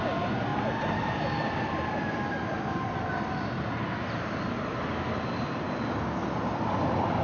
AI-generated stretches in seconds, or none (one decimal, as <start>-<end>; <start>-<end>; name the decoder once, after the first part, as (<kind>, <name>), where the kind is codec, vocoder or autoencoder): none